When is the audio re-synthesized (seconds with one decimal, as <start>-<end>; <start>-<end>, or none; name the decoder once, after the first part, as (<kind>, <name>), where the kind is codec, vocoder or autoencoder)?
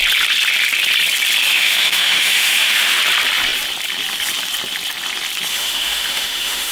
1.5-3.0 (autoencoder, DAC-VAE); 5.5-6.7